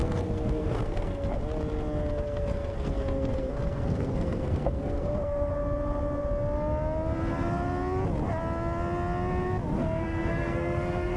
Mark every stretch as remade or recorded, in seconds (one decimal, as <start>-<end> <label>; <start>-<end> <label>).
0.0-1.4 remade; 1.4-2.2 recorded; 2.2-5.5 remade; 5.5-9.8 recorded; 9.8-11.2 remade